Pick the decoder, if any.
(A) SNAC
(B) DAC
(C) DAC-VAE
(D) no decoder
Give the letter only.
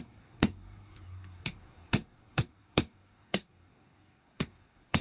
A